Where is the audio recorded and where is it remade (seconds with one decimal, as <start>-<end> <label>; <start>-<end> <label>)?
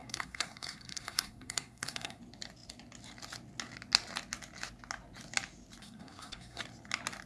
0.0-2.2 remade; 2.2-5.8 recorded; 5.8-6.6 remade; 6.6-7.3 recorded